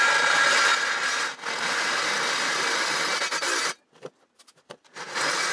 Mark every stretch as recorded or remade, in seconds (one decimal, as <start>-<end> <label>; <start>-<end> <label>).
0.0-5.5 recorded

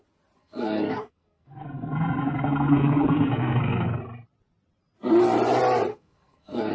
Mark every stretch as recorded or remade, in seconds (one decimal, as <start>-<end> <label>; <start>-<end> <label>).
0.0-0.4 recorded; 0.4-4.0 remade; 4.0-5.9 recorded; 5.9-6.7 remade

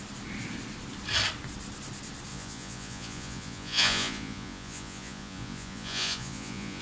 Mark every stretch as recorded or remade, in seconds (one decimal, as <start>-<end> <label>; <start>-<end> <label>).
0.0-2.3 recorded; 2.3-6.8 remade

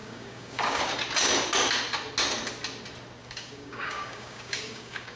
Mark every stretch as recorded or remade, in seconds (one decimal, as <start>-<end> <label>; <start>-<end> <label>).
0.0-0.8 remade; 0.8-3.2 recorded; 3.2-5.2 remade

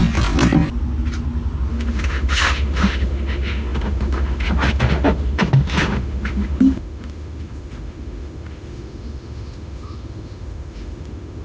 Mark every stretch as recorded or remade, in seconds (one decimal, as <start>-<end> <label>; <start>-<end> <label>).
0.0-1.7 recorded; 1.7-11.4 remade

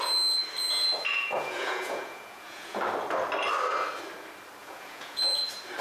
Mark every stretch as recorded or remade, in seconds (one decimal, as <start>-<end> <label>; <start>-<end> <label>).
0.0-1.1 recorded; 1.1-2.8 remade; 2.8-4.6 recorded; 4.6-5.2 remade; 5.2-5.8 recorded

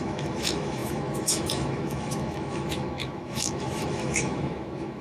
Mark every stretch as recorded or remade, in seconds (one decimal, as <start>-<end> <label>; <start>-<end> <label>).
0.0-5.0 remade